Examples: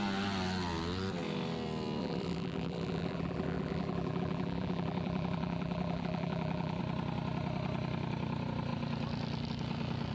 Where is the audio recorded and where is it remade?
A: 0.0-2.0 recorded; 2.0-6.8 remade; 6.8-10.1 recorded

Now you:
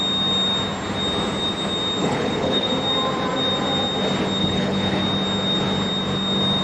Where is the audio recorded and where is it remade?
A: 0.0-2.0 recorded; 2.0-2.7 remade; 2.7-4.4 recorded; 4.4-5.0 remade; 5.0-6.6 recorded